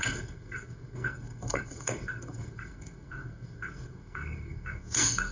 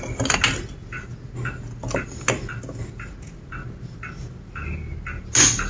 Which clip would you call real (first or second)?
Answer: second